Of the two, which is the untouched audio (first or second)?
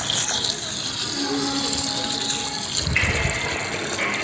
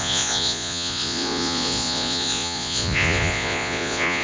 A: first